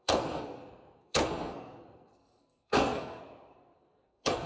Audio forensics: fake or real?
fake